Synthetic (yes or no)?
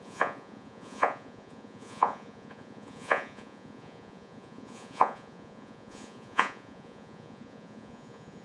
yes